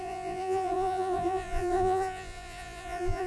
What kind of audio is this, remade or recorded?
remade